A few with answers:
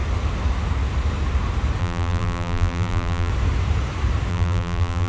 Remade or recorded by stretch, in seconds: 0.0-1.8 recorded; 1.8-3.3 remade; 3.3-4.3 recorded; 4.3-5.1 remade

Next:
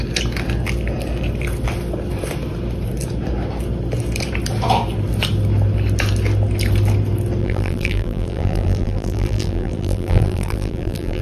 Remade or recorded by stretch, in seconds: 0.0-7.4 recorded; 7.4-11.2 remade